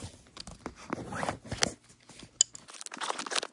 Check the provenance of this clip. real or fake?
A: real